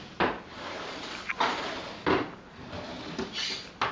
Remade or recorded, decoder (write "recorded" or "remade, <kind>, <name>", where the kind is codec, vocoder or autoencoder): recorded